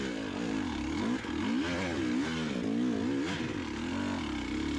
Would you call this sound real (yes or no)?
yes